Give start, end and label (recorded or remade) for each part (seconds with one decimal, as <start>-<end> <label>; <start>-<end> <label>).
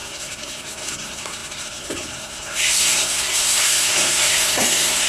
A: 0.0-5.1 remade